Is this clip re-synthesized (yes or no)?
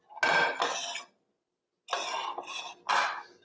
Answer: no